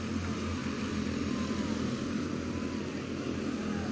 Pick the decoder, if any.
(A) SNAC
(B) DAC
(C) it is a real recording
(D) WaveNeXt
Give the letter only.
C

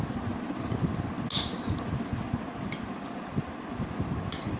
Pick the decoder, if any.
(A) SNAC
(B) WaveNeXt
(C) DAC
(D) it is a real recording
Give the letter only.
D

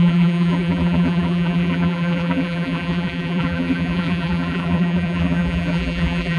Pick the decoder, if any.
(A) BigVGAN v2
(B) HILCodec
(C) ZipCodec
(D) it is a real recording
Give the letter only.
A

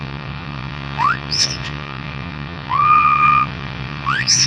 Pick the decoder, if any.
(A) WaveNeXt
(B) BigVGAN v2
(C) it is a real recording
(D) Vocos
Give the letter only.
A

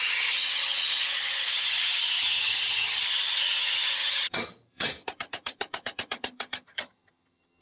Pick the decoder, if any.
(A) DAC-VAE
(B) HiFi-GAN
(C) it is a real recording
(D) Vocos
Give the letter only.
B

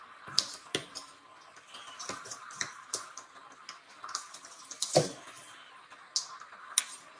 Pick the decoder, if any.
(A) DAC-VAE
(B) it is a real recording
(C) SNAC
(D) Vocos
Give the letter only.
B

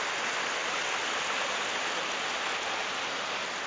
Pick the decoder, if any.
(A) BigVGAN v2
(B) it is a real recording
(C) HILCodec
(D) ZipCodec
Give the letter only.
B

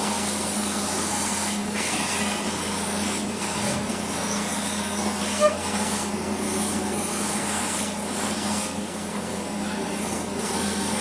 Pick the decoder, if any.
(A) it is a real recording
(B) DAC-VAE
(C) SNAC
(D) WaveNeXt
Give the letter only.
C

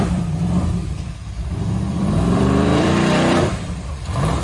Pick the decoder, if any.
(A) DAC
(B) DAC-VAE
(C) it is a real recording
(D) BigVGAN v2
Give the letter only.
D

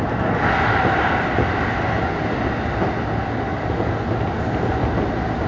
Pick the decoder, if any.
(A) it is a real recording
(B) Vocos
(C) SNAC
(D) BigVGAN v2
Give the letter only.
A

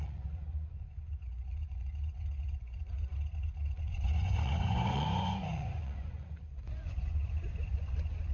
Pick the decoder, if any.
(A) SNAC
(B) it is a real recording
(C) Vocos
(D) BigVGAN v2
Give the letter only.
C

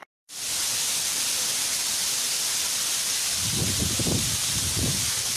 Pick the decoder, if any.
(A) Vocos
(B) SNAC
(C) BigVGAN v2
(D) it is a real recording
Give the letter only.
C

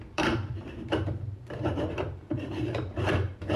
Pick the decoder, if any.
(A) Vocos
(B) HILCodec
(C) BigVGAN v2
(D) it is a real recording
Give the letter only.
C